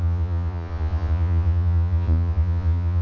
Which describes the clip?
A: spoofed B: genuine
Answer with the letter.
A